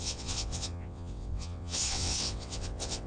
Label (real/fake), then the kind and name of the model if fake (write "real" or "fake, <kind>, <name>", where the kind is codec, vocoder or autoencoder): fake, vocoder, WaveNeXt